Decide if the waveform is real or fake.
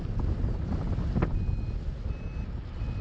real